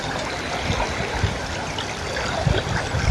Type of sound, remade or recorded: recorded